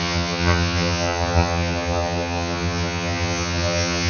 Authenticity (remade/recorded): remade